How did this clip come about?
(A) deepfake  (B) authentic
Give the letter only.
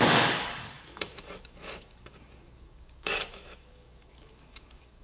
A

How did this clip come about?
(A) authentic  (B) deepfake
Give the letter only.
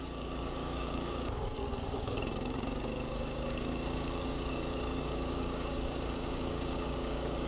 B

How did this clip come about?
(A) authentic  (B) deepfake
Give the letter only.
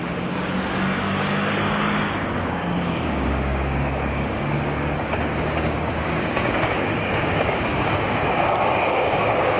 B